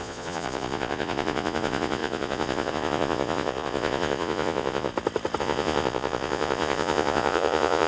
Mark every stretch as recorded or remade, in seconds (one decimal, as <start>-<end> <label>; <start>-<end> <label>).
0.0-4.9 remade; 4.9-5.4 recorded; 5.4-7.9 remade